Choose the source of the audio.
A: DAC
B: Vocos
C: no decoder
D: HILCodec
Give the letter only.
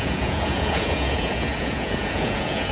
B